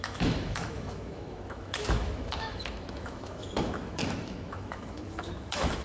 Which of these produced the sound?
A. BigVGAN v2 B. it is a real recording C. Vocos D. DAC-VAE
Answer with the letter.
D